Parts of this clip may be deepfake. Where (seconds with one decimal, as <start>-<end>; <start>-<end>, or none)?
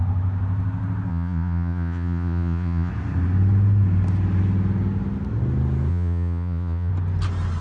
1.1-2.9; 5.9-6.9